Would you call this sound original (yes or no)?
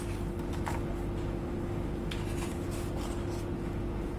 yes